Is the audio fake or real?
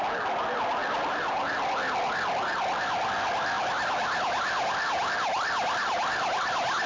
real